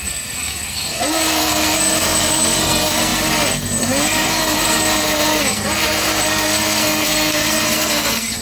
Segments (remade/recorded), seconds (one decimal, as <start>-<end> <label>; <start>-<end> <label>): 0.0-8.4 remade